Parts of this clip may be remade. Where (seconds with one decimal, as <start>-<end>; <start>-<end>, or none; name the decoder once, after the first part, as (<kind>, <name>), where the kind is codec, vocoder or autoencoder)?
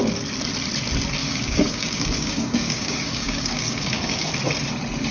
1.2-4.3 (codec, DAC)